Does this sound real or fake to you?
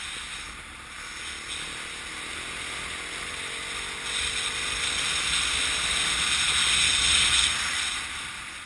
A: real